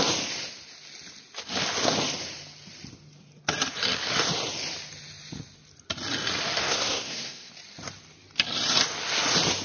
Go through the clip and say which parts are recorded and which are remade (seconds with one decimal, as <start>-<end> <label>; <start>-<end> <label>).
0.0-6.6 recorded; 6.6-7.5 remade; 7.5-9.6 recorded